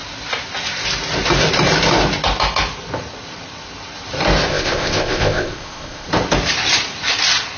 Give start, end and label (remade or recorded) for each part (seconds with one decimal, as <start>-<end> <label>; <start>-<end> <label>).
0.0-4.5 recorded; 4.5-6.1 remade; 6.1-7.6 recorded